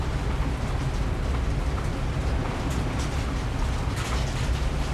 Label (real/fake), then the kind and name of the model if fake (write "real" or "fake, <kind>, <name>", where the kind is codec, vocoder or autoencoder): real